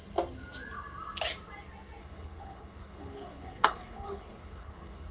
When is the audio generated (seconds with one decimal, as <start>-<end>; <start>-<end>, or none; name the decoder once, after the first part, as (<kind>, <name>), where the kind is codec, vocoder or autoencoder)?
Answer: 2.0-5.1 (codec, HILCodec)